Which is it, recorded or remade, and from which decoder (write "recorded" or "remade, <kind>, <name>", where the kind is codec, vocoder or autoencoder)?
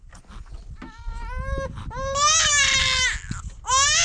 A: recorded